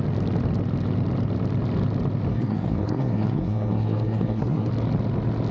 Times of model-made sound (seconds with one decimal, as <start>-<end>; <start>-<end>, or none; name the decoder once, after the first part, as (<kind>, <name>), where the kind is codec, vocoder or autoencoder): 2.3-4.7 (codec, SNAC)